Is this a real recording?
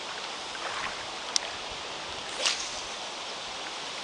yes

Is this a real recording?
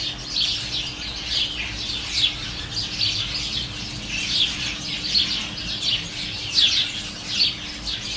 yes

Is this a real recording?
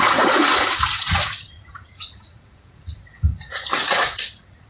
no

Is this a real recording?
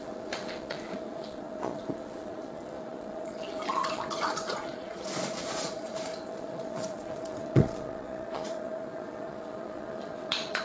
no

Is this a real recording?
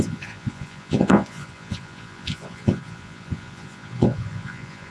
no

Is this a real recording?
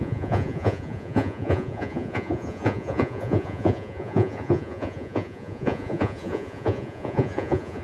no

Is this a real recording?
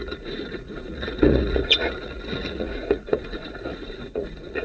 no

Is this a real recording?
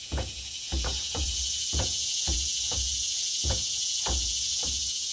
no